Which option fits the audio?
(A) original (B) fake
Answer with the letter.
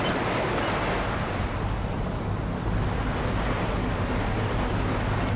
A